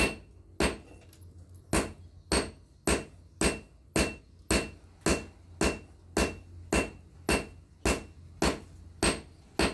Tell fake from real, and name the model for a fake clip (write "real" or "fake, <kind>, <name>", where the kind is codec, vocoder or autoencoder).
real